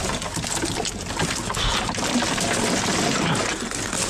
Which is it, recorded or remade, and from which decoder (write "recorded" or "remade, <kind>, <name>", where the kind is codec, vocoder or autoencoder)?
recorded